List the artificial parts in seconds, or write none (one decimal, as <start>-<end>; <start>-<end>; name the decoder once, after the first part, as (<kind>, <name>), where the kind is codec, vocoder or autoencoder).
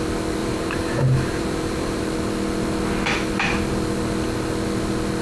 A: 0.4-2.0 (vocoder, BigVGAN v2)